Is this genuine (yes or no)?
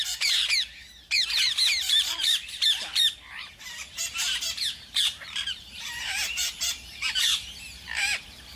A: no